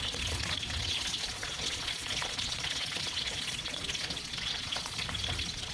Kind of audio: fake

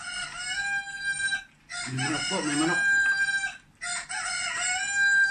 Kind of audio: real